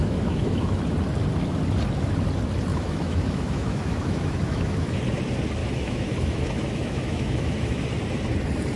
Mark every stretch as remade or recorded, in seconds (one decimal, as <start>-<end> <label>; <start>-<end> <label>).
0.0-0.8 remade; 0.8-2.7 recorded; 2.7-5.0 remade; 5.0-5.6 recorded; 5.6-7.8 remade; 7.8-8.8 recorded